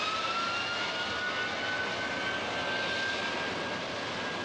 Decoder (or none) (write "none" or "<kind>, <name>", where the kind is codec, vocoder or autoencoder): none